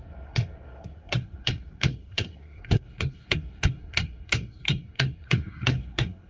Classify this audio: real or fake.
fake